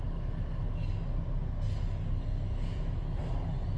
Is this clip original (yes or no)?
yes